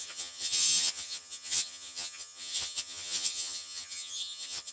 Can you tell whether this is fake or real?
fake